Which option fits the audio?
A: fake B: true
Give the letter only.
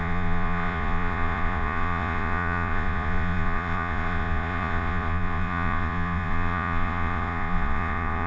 A